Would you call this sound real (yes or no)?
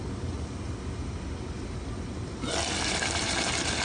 yes